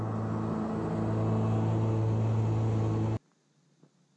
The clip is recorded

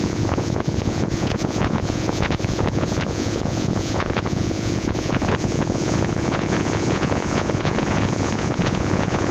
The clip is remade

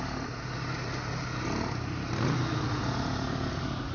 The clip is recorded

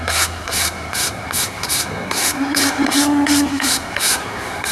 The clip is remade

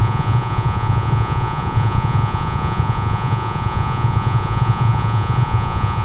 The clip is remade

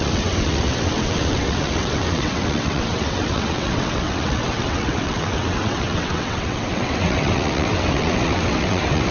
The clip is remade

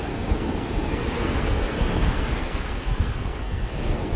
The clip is remade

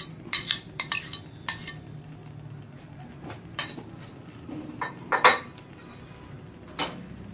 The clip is remade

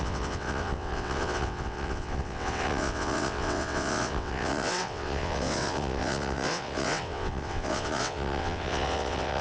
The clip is remade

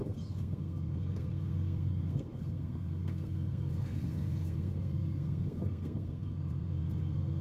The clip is remade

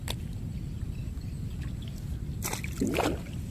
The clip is recorded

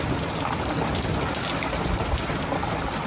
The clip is recorded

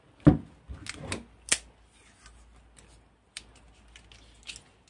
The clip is recorded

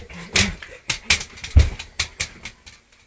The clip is recorded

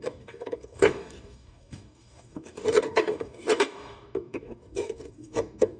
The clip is remade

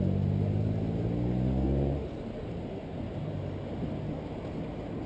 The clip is recorded